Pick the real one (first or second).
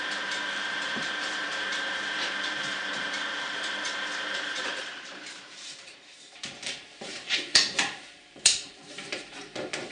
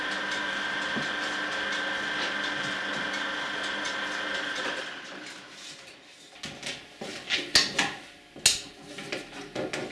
second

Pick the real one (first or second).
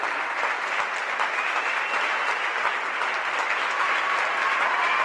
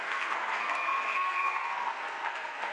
first